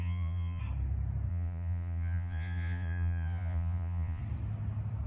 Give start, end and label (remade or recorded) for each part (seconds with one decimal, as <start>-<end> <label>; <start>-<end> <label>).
0.0-0.6 remade; 0.6-1.3 recorded; 1.3-4.2 remade; 4.2-5.1 recorded

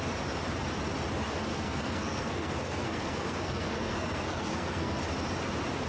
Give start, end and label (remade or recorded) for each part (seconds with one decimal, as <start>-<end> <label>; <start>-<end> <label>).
0.0-1.5 recorded; 1.5-5.0 remade; 5.0-5.9 recorded

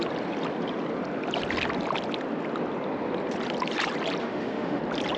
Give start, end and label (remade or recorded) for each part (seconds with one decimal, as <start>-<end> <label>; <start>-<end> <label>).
0.0-4.2 recorded; 4.2-4.8 remade; 4.8-5.2 recorded

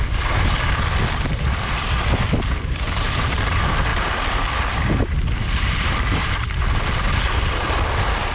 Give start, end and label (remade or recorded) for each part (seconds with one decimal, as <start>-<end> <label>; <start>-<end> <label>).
0.0-8.3 recorded

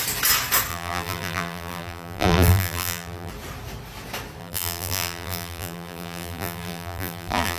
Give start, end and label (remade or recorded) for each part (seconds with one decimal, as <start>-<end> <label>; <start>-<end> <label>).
0.0-0.7 recorded; 0.7-3.3 remade; 3.3-4.4 recorded; 4.4-7.6 remade

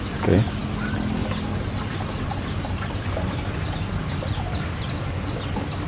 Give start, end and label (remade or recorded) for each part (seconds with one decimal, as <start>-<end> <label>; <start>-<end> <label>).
0.0-5.9 recorded

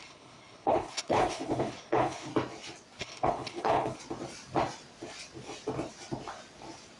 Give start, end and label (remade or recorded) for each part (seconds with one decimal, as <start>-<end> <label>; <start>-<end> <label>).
0.0-2.3 remade; 2.3-3.0 recorded; 3.0-4.0 remade; 4.0-7.0 recorded

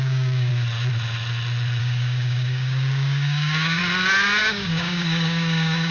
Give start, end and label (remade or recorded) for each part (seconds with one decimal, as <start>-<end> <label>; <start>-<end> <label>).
0.0-0.5 remade; 0.5-1.8 recorded; 1.8-3.8 remade; 3.8-4.4 recorded; 4.4-5.9 remade